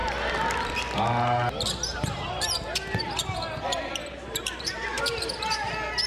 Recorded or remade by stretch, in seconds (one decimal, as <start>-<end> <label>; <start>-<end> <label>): 0.0-1.9 recorded; 1.9-5.5 remade; 5.5-6.1 recorded